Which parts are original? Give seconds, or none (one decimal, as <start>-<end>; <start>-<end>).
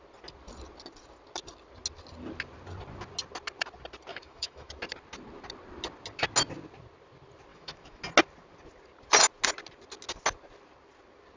0.0-4.1; 4.7-7.5; 8.0-11.4